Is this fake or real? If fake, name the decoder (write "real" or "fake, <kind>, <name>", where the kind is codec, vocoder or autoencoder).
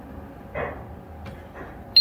real